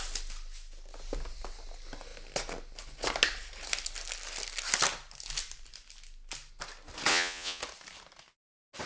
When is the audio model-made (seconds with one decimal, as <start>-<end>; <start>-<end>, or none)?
7.1-7.6